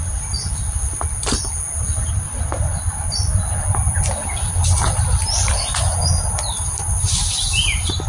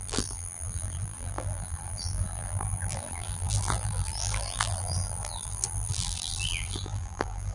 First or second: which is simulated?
second